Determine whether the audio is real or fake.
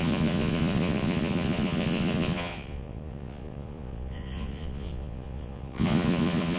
fake